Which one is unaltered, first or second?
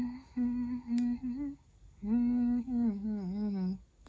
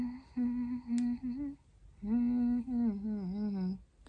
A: second